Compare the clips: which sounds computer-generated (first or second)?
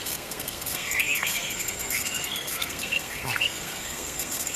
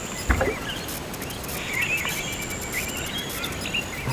first